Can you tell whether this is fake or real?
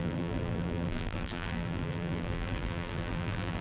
fake